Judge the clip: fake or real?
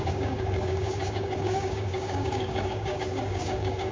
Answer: fake